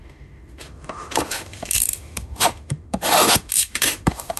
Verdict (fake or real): fake